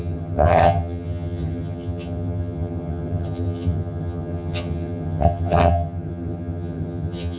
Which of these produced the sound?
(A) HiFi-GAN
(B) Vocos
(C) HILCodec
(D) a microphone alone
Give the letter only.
A